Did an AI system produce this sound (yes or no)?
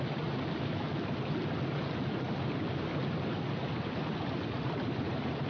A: no